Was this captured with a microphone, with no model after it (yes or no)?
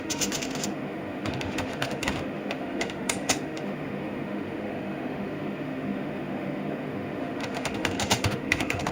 no